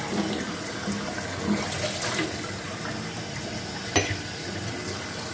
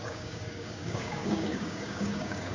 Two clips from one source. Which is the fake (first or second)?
second